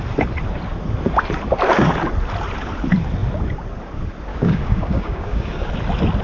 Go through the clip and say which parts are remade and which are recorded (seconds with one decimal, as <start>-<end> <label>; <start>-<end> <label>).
0.0-4.3 recorded; 4.3-5.7 remade; 5.7-6.2 recorded